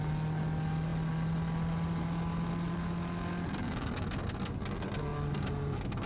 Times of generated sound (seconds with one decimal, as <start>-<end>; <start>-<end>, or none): none